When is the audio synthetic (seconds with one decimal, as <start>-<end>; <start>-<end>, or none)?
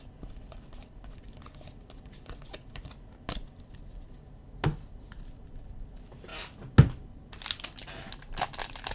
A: none